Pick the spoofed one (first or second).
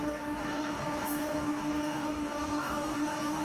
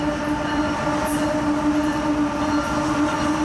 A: first